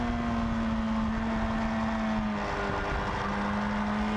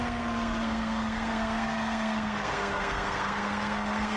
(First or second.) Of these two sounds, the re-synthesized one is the second